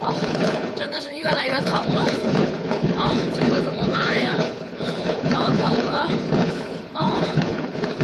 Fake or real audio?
fake